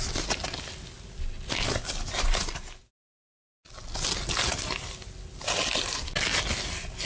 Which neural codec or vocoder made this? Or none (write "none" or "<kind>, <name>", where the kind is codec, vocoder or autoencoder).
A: none